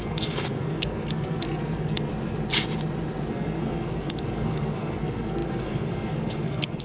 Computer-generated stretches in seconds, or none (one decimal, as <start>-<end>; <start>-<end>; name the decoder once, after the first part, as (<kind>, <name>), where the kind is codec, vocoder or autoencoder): 0.0-2.1 (codec, SNAC); 3.3-6.8